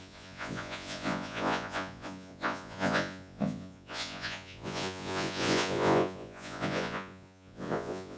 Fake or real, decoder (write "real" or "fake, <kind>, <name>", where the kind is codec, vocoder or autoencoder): fake, vocoder, Vocos